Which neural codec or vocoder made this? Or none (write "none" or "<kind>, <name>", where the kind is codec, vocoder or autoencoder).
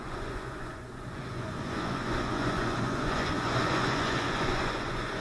vocoder, Vocos